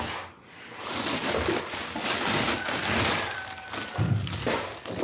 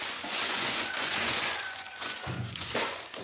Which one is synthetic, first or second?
second